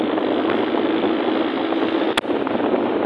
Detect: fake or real real